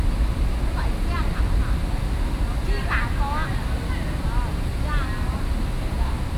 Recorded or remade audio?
recorded